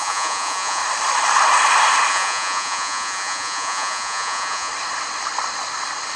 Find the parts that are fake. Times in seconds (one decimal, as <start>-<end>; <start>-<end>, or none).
0.0-0.8; 2.1-4.7